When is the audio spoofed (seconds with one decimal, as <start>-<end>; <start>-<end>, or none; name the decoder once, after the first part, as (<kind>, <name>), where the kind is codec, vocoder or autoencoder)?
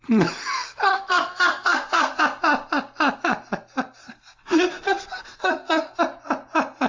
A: 0.9-2.2 (codec, SNAC); 4.0-6.0